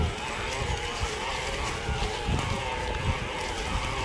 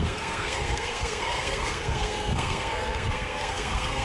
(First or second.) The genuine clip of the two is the first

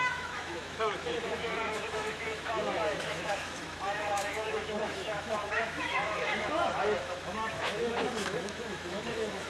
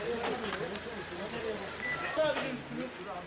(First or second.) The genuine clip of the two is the second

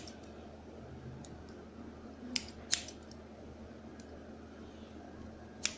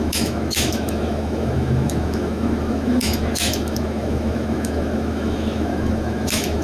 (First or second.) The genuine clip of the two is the first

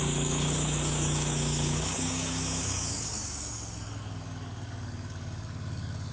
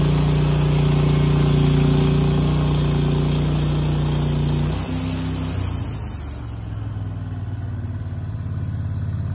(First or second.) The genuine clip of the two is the second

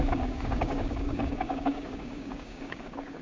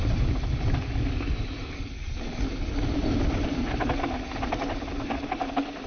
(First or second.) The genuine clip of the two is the second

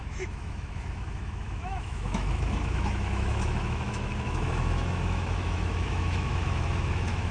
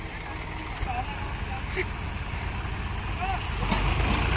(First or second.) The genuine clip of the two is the second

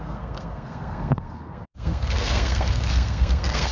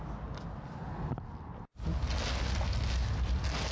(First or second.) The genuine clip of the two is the second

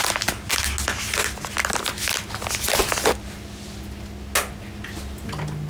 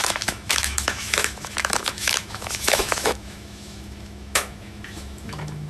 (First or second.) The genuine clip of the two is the first